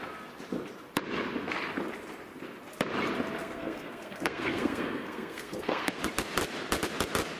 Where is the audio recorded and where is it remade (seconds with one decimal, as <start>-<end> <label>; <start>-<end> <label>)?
0.0-3.4 recorded; 3.4-6.0 remade; 6.0-7.4 recorded